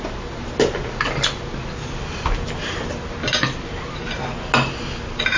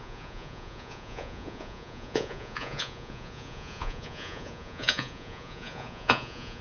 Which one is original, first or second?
first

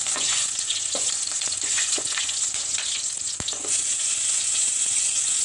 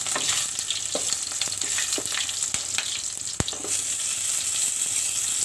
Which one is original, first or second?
second